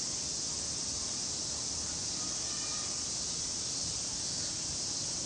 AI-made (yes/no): no